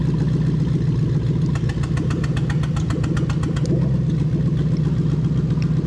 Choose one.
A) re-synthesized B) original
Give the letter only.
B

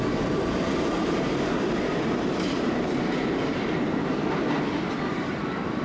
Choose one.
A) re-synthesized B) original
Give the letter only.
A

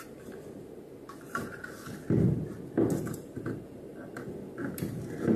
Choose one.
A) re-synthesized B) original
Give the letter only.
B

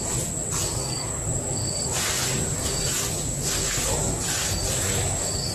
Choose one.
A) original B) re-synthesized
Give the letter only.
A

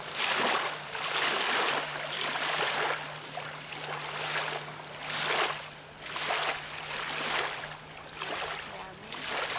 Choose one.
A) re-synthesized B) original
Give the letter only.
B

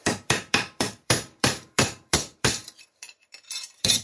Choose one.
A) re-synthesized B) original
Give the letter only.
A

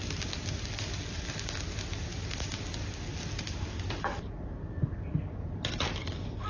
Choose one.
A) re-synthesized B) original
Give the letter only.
B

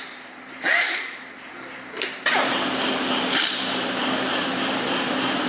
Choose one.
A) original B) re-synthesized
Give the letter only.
B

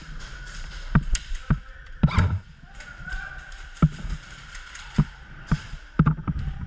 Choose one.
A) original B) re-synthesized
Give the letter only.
B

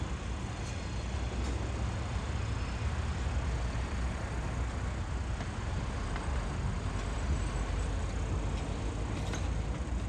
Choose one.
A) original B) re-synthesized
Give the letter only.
A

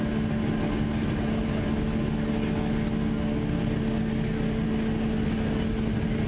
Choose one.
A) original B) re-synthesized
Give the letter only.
A